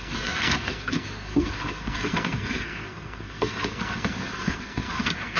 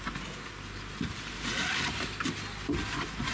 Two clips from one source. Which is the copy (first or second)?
first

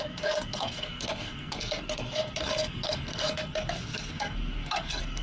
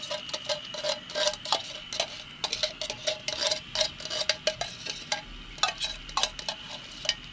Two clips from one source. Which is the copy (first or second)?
first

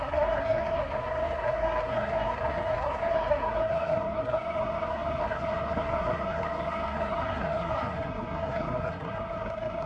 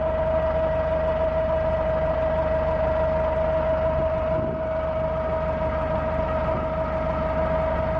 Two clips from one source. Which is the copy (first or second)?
first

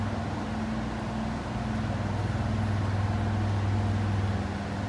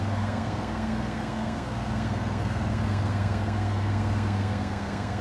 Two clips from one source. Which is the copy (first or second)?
second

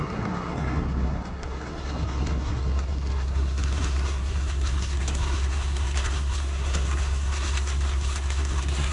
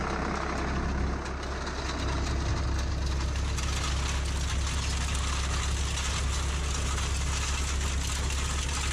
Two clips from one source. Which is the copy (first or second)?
first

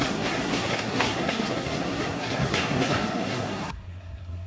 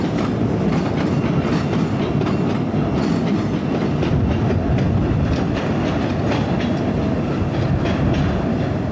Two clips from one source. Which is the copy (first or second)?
first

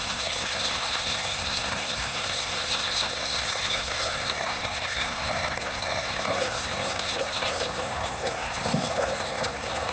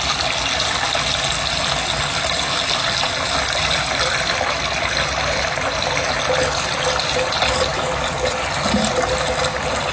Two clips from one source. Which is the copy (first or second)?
first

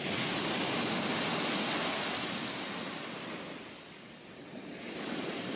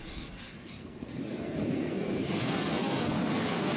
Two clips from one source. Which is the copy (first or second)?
second